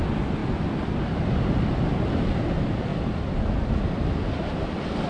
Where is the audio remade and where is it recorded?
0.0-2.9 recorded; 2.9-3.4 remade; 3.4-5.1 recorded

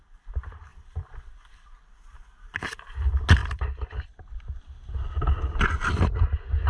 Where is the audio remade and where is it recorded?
0.0-0.7 recorded; 0.7-1.9 remade; 1.9-3.4 recorded; 3.4-6.2 remade; 6.2-6.7 recorded

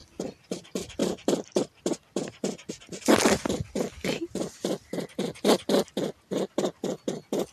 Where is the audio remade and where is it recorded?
0.0-0.6 remade; 0.6-1.0 recorded; 1.0-2.7 remade; 2.7-7.5 recorded

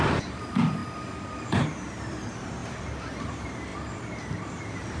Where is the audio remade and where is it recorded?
0.0-0.8 remade; 0.8-1.3 recorded; 1.3-2.6 remade; 2.6-3.2 recorded; 3.2-3.7 remade; 3.7-4.2 recorded; 4.2-5.0 remade